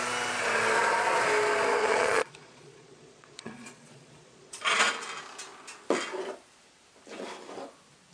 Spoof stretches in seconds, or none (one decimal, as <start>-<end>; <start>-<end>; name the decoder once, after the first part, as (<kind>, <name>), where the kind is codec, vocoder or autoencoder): 1.8-4.8 (vocoder, Vocos)